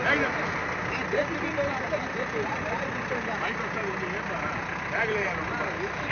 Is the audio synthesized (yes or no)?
no